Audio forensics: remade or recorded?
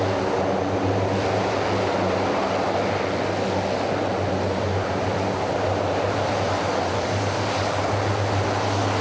recorded